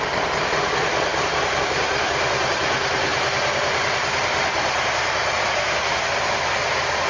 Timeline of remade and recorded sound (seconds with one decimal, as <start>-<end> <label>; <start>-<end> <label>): 0.0-7.1 recorded